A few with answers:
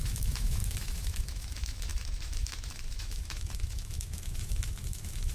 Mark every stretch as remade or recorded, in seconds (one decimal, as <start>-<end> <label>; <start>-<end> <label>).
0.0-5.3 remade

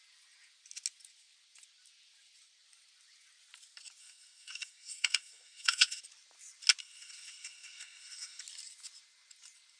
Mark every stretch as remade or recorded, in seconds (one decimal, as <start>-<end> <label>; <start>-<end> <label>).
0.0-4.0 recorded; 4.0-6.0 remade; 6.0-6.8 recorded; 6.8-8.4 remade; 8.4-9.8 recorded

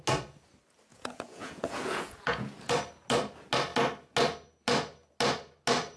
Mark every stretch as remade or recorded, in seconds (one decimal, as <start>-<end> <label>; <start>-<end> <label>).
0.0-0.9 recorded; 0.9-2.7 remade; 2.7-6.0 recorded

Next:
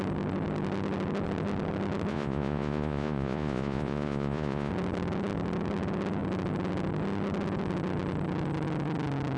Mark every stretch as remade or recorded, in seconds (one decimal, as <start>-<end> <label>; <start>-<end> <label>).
0.0-2.1 recorded; 2.1-4.7 remade; 4.7-9.4 recorded

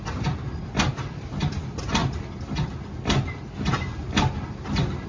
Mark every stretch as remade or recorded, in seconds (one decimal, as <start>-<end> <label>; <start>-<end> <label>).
0.0-5.1 recorded